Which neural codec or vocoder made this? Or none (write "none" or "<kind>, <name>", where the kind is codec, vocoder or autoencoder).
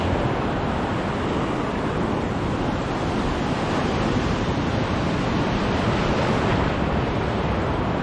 none